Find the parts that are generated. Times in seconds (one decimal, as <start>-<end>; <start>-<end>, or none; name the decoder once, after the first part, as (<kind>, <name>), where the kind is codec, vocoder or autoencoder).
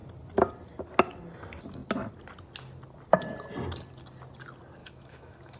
4.8-5.6 (autoencoder, DAC-VAE)